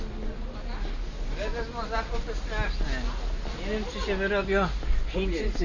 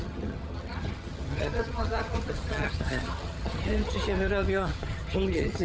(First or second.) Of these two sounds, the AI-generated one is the second